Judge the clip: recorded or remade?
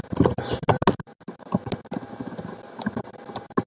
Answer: recorded